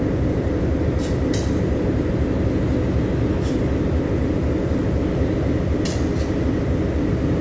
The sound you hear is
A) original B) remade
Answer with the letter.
A